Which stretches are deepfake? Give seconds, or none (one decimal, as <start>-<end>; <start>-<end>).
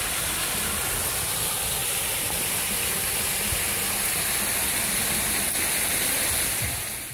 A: 1.8-4.2